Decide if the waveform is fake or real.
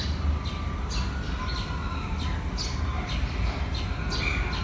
real